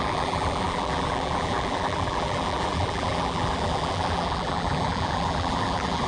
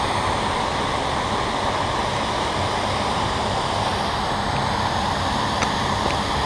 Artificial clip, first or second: first